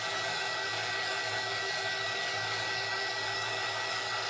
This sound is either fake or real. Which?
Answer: fake